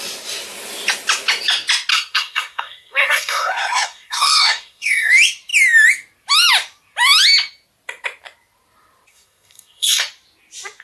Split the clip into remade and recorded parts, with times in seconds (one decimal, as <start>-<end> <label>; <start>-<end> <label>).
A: 0.0-1.9 recorded; 1.9-5.1 remade; 5.1-9.1 recorded; 9.1-10.0 remade; 10.0-10.8 recorded